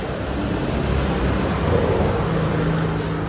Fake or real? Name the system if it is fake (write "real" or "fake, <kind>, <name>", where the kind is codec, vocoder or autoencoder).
real